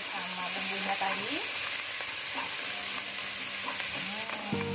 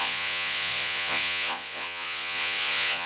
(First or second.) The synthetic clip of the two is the second